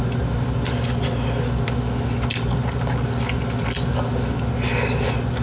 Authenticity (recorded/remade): recorded